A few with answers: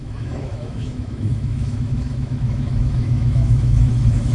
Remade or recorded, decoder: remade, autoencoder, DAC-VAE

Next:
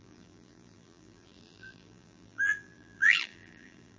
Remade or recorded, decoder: remade, vocoder, BigVGAN v2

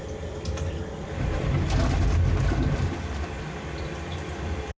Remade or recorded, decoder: recorded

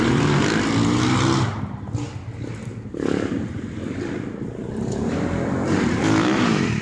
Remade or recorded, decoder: recorded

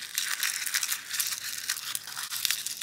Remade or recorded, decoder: recorded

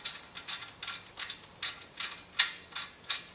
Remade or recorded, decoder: recorded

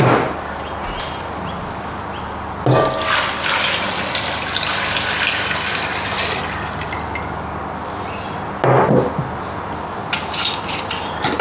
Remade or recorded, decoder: recorded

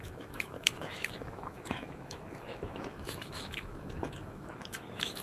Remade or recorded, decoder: remade, autoencoder, DAC-VAE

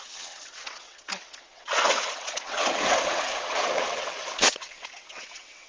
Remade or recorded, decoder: remade, vocoder, WaveNeXt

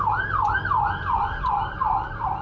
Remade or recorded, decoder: recorded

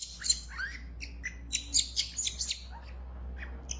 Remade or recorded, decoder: recorded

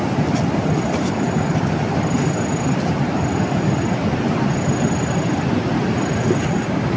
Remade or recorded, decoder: recorded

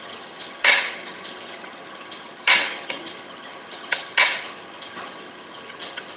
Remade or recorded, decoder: remade, vocoder, HiFi-GAN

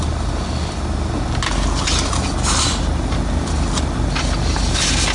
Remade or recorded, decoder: recorded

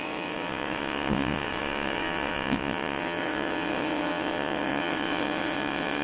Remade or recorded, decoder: remade, vocoder, WaveNeXt